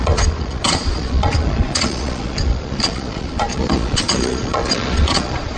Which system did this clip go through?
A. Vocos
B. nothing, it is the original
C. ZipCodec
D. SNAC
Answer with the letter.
A